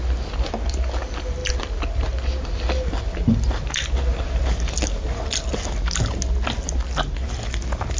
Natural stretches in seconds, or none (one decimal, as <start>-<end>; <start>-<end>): 0.0-8.0